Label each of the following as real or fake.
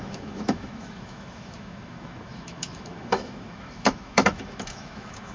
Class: fake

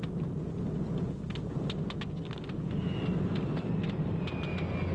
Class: real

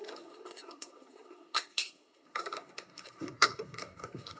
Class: fake